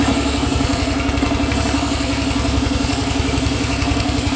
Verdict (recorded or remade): remade